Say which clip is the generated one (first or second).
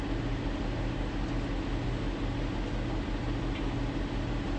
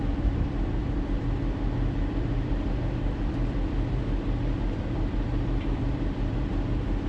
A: second